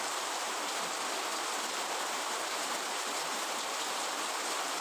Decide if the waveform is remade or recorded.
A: remade